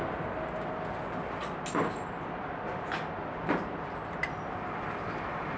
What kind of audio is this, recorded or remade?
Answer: recorded